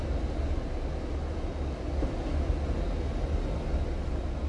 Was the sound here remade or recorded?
recorded